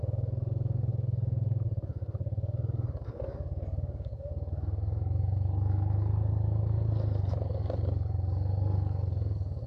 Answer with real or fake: fake